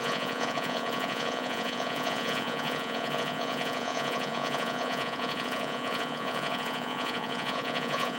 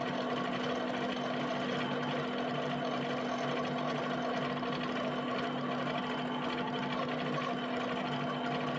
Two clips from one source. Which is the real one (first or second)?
second